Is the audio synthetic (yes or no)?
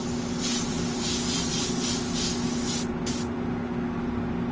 no